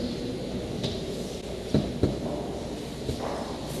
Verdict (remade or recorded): recorded